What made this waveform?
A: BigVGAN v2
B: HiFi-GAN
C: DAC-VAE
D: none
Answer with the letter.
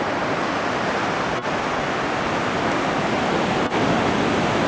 D